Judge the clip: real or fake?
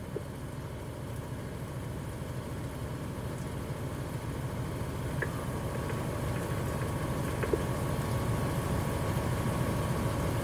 real